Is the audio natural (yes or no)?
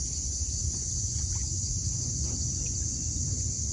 no